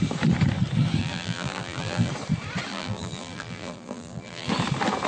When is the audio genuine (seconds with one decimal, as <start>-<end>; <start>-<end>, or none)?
0.0-1.0; 2.1-2.7; 4.5-5.1

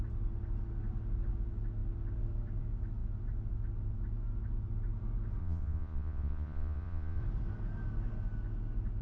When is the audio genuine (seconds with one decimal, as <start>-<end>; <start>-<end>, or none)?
0.0-5.4; 7.2-9.0